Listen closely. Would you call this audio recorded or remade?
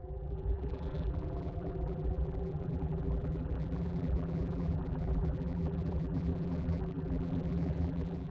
remade